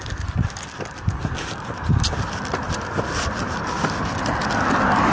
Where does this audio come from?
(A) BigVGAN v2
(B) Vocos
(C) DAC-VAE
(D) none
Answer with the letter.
D